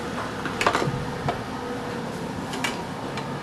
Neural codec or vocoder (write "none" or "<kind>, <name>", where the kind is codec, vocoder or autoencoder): none